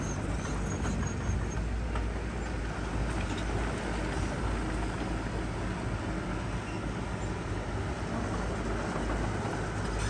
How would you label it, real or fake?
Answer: real